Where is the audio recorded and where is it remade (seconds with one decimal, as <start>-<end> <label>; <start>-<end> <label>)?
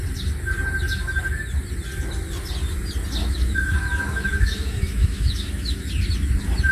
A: 0.0-3.2 recorded; 3.2-5.9 remade; 5.9-6.7 recorded